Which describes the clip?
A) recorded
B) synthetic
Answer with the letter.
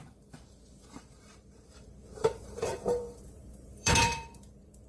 B